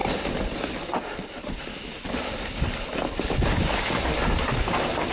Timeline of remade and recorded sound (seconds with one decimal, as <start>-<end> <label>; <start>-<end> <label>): 0.0-5.1 recorded